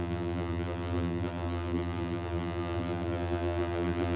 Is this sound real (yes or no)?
no